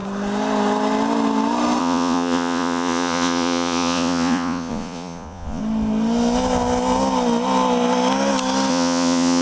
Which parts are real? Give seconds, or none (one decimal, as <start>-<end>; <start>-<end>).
0.0-1.8; 5.6-8.7